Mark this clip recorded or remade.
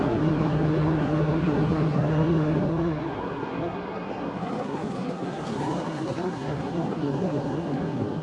remade